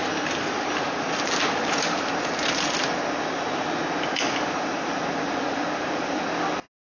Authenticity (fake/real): real